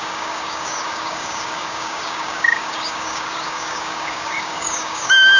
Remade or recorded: remade